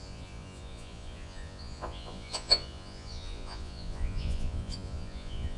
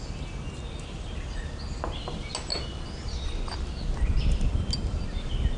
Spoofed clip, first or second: first